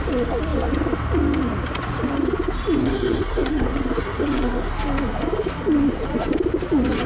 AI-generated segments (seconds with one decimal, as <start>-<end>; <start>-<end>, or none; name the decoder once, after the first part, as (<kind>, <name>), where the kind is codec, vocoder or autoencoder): 2.8-4.7 (codec, SNAC)